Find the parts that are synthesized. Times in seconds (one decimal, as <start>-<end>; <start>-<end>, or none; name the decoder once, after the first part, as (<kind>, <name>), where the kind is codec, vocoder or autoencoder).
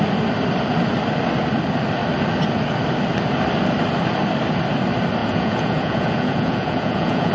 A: 5.2-7.3 (vocoder, Vocos)